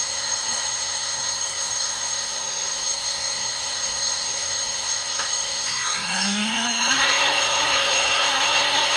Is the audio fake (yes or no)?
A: yes